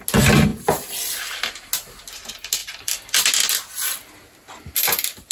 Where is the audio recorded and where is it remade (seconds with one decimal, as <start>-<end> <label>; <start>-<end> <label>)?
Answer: 0.0-0.5 recorded; 0.5-1.4 remade; 1.4-2.6 recorded; 2.6-3.2 remade; 3.2-5.3 recorded

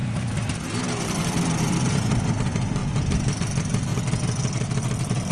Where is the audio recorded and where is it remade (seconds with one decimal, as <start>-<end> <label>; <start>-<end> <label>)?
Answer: 0.0-1.6 recorded; 1.6-3.9 remade; 3.9-4.8 recorded; 4.8-5.3 remade

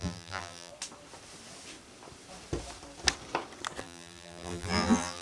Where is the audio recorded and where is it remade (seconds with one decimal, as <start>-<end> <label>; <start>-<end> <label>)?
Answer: 0.0-0.7 remade; 0.7-3.8 recorded; 3.8-5.2 remade

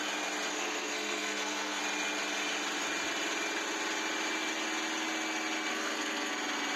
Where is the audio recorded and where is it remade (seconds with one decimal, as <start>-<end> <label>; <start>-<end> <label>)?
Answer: 0.0-0.5 recorded; 0.5-1.8 remade; 1.8-5.7 recorded; 5.7-6.3 remade; 6.3-6.8 recorded

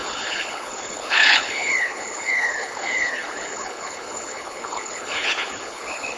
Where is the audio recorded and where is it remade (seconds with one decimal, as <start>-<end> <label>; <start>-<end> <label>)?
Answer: 0.0-6.2 remade

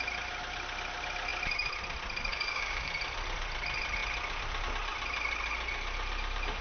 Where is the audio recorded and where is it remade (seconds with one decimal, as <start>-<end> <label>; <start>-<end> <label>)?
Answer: 0.0-2.3 recorded; 2.3-2.9 remade; 2.9-6.6 recorded